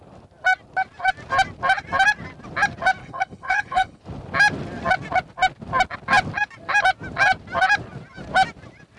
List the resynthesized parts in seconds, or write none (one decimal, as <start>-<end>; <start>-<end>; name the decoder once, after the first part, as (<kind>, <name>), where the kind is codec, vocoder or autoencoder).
3.0-4.0 (codec, HILCodec)